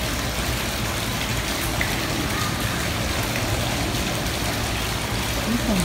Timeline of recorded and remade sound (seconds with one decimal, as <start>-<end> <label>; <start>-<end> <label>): 0.0-5.8 recorded